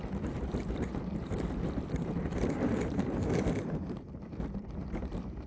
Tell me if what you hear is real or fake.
fake